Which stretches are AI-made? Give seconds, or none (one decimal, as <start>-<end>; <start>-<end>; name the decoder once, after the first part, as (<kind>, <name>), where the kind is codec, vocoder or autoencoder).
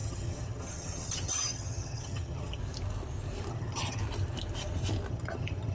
0.0-2.6 (vocoder, HiFi-GAN); 3.5-4.0; 5.1-5.7